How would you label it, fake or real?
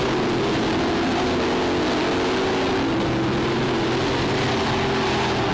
real